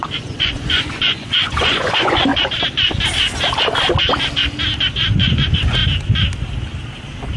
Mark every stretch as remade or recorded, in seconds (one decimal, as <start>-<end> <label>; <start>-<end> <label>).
0.0-2.3 remade; 2.3-5.1 recorded; 5.1-5.8 remade; 5.8-7.4 recorded